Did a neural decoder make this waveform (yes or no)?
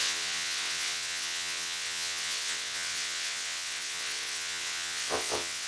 yes